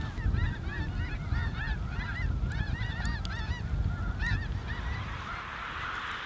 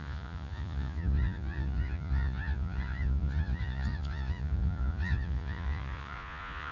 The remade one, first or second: second